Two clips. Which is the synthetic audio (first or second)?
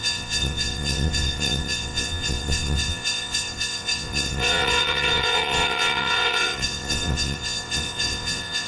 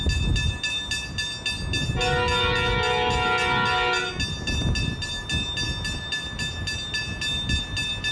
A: first